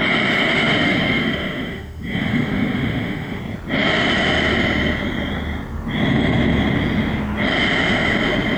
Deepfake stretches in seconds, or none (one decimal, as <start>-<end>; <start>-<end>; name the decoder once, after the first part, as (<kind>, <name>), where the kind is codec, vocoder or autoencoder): 0.5-3.4 (autoencoder, DAC-VAE)